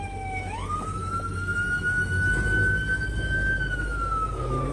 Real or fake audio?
fake